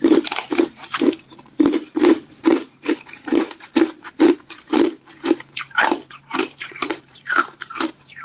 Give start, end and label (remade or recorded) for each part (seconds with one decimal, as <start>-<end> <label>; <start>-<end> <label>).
0.0-8.2 remade